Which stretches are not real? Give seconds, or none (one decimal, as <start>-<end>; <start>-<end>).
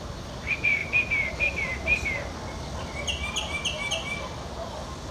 none